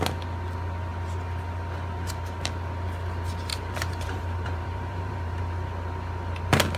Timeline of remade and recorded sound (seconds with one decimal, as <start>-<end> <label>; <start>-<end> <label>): 0.0-3.5 recorded; 3.5-5.4 remade; 5.4-6.8 recorded